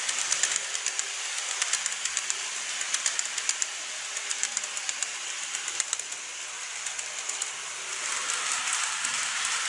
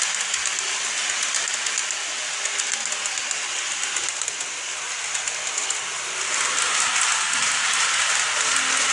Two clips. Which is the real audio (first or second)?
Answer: second